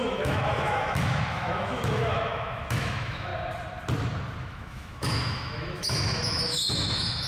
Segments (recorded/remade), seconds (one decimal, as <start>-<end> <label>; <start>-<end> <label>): 0.0-3.3 remade; 3.3-4.4 recorded; 4.4-7.3 remade